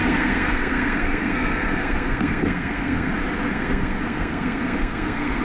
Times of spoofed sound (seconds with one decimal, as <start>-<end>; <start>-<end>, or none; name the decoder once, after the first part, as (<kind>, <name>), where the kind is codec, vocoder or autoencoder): 0.0-3.1 (codec, SNAC); 3.5-5.4